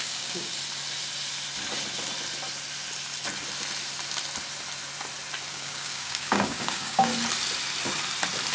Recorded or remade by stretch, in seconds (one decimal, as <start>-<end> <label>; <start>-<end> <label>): 0.0-0.5 remade; 0.5-5.5 recorded; 5.5-7.1 remade; 7.1-8.5 recorded